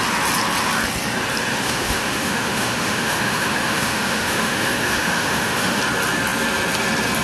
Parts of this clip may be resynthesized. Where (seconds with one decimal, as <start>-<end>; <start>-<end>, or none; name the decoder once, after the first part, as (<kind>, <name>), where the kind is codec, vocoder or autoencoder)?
1.5-5.8 (autoencoder, DAC-VAE)